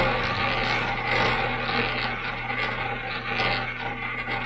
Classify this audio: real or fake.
real